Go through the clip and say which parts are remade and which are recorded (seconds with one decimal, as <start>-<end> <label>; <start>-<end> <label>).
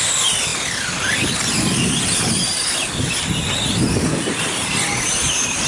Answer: 0.0-5.7 recorded